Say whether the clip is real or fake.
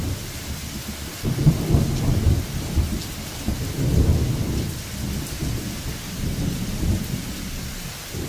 real